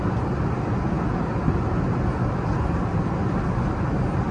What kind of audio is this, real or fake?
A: real